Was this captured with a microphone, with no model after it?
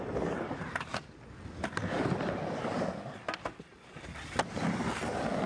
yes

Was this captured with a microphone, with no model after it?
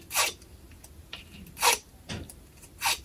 yes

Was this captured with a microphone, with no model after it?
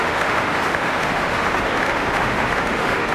no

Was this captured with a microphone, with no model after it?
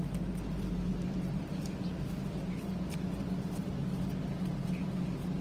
yes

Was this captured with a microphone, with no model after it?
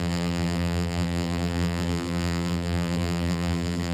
no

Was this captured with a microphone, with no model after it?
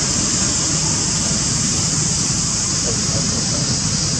yes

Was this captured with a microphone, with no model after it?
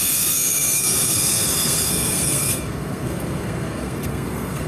no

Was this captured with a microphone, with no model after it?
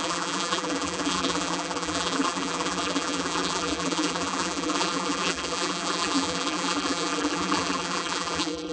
no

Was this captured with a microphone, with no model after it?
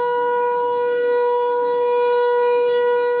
no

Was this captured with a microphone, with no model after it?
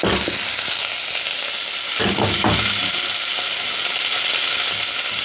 yes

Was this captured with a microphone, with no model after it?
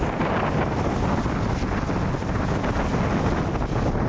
yes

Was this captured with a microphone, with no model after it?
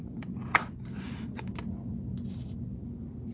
yes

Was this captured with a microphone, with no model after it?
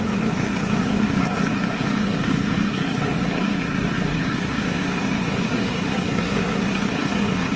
no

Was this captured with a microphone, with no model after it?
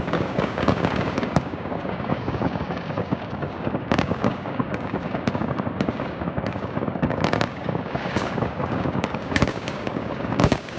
no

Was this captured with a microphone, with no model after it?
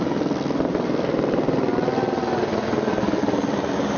yes